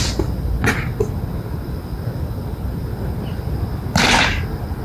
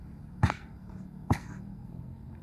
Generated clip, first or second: second